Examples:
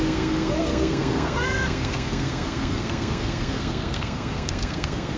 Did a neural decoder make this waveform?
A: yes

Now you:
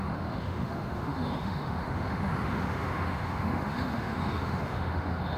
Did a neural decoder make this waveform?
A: yes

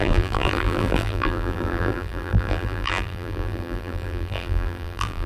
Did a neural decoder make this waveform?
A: yes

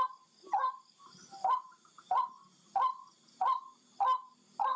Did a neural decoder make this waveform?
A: no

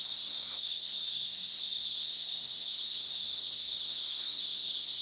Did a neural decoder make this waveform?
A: yes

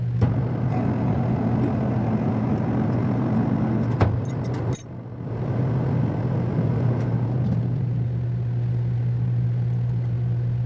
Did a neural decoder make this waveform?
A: no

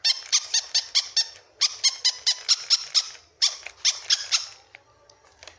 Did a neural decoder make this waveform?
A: no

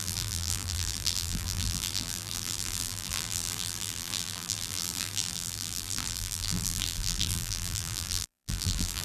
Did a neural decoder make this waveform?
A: yes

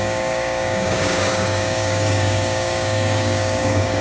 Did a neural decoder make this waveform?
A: yes